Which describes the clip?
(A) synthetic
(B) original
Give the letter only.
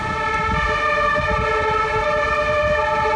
B